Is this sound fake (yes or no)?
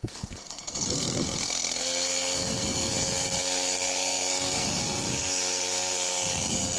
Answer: yes